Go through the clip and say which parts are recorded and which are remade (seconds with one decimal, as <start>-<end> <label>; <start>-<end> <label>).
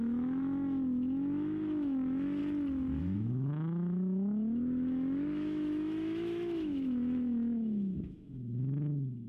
0.0-2.4 remade; 2.4-3.0 recorded; 3.0-9.3 remade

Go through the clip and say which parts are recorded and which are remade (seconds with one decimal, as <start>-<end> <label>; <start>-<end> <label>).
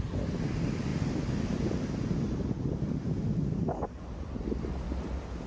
0.0-5.5 recorded